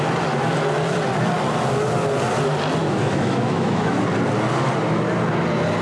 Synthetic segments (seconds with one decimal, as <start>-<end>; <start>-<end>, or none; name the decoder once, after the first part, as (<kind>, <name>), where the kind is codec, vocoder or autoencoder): 2.8-4.0 (autoencoder, DAC-VAE)